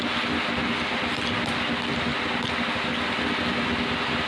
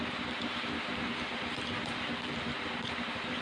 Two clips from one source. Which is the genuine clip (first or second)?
first